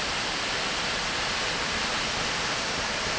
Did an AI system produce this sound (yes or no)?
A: no